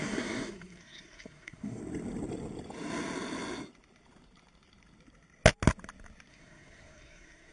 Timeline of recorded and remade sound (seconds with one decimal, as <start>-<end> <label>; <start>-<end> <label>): 0.0-1.8 remade; 1.8-6.3 recorded; 6.3-7.5 remade